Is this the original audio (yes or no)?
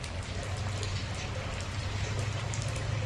yes